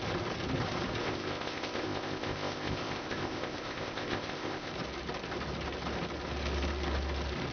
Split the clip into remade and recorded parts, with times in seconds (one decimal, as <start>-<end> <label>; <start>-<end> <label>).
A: 0.0-1.0 recorded; 1.0-4.7 remade; 4.7-7.5 recorded